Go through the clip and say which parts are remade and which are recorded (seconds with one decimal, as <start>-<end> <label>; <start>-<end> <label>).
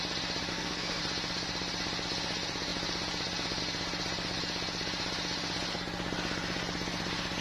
0.0-0.5 recorded; 0.5-1.0 remade; 1.0-7.4 recorded